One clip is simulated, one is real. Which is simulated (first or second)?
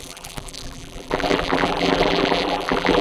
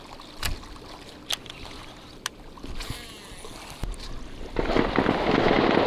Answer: first